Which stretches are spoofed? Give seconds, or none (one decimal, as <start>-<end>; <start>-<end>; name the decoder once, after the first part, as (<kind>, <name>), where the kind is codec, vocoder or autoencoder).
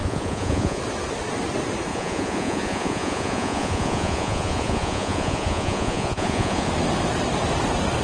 0.0-0.8 (vocoder, Vocos); 1.9-6.7